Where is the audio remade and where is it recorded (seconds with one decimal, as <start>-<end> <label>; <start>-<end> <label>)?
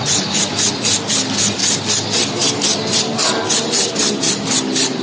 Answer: 0.0-5.0 recorded